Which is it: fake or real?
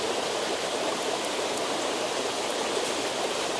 real